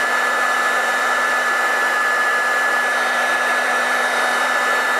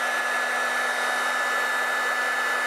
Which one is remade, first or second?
first